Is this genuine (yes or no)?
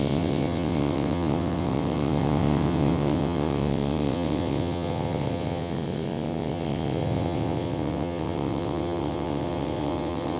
no